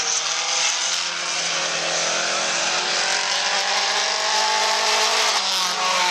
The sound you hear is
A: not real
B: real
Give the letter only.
B